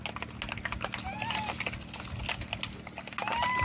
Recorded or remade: recorded